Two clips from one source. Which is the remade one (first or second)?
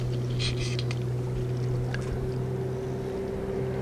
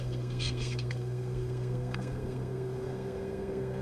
second